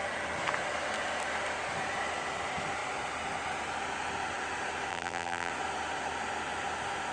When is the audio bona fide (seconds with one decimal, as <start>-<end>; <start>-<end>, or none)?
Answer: 0.0-4.9; 5.5-7.1